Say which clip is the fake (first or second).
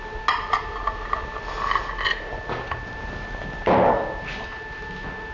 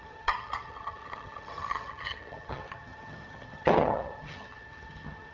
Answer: second